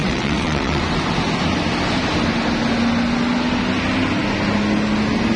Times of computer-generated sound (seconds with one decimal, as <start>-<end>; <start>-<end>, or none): 0.0-0.8